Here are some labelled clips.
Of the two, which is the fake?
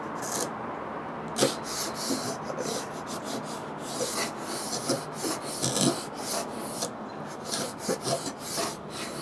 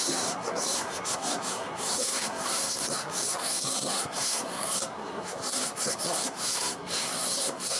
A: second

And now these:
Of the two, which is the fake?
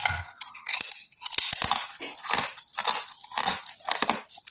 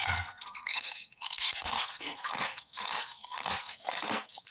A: second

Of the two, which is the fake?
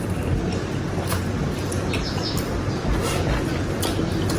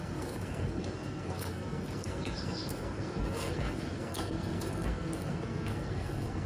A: second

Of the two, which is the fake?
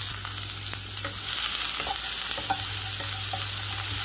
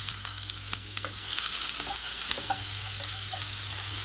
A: second